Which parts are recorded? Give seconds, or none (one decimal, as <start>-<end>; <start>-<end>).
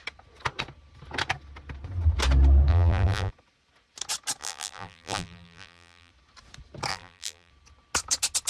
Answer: 0.0-2.7; 3.3-4.4; 6.1-6.9; 7.5-8.5